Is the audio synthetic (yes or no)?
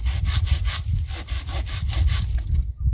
no